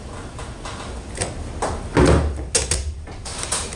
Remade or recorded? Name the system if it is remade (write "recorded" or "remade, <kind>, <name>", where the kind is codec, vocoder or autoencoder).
recorded